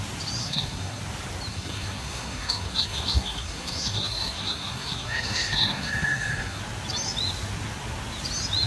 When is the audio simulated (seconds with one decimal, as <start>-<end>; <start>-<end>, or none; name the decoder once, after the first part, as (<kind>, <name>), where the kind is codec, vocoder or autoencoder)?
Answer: 0.4-1.0 (codec, SNAC); 1.5-6.6